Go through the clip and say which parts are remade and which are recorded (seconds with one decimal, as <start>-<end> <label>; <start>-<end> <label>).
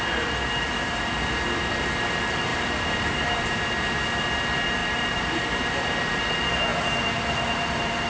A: 0.0-2.5 recorded; 2.5-3.4 remade; 3.4-4.8 recorded; 4.8-6.2 remade; 6.2-8.1 recorded